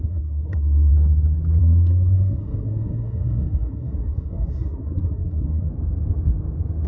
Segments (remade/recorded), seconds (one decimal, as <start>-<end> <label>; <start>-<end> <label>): 0.0-0.9 remade; 0.9-1.6 recorded; 1.6-5.7 remade; 5.7-6.9 recorded